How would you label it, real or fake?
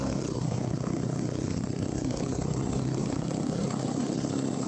fake